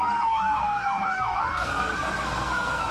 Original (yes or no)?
no